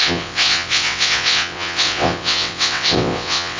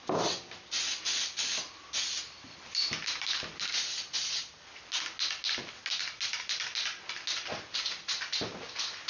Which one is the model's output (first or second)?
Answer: first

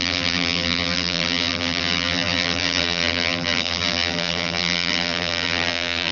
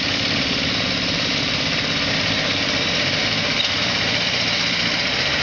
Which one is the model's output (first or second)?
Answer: first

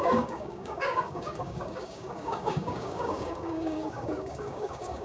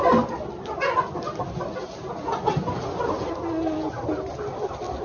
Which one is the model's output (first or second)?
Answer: first